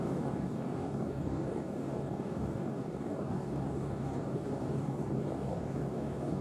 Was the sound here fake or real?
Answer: fake